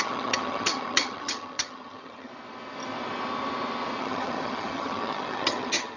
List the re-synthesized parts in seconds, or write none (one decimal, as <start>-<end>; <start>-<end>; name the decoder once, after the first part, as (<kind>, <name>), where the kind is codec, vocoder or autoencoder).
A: 0.0-2.3 (vocoder, HiFi-GAN); 4.0-6.0